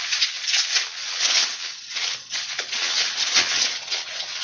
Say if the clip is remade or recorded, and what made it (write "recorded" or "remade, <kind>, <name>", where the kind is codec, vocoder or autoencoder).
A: remade, vocoder, Vocos